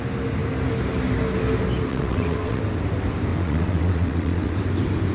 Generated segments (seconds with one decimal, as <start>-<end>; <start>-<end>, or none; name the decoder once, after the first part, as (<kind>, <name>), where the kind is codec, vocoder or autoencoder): 1.9-2.6 (vocoder, WaveNeXt); 3.3-4.6